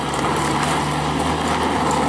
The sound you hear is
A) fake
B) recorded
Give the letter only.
B